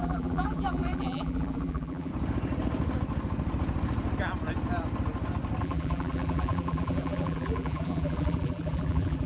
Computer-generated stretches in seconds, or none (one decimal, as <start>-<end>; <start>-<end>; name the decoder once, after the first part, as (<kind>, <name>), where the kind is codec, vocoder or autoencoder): 0.0-2.1 (vocoder, BigVGAN v2); 5.6-9.3